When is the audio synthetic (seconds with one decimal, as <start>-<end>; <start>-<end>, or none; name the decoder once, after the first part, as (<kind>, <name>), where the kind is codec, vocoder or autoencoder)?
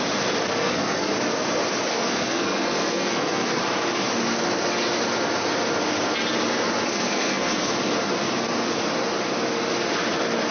0.6-1.1 (codec, SNAC); 1.9-3.6; 6.9-7.7